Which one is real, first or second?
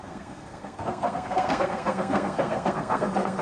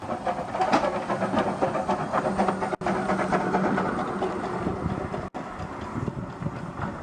second